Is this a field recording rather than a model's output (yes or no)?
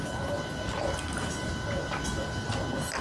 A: yes